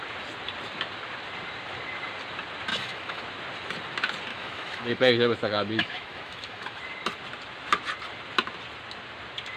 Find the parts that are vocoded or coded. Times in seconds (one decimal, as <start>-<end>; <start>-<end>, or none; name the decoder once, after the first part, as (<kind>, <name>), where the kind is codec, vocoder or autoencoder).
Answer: 2.7-3.2 (autoencoder, DAC-VAE); 4.3-6.8